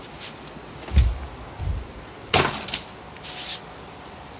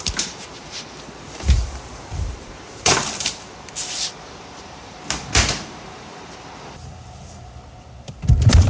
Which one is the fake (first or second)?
second